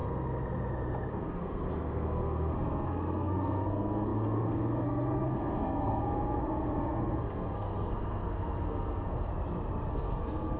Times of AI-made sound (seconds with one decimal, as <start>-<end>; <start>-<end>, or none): 1.1-9.3; 9.9-10.6